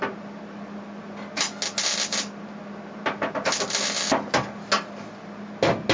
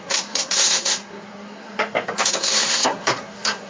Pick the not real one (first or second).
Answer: second